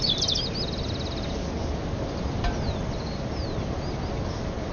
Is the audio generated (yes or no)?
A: no